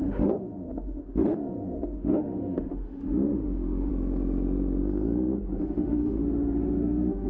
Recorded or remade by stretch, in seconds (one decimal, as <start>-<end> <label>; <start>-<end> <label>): 0.0-3.9 remade; 3.9-5.6 recorded; 5.6-7.3 remade